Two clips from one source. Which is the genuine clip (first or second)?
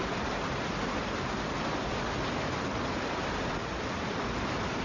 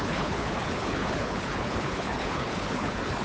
first